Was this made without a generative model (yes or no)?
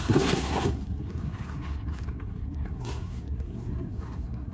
no